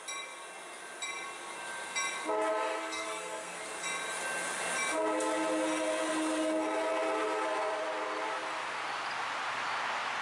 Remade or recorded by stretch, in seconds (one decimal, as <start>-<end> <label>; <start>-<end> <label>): 0.0-2.5 recorded; 2.5-3.6 remade; 3.6-10.2 recorded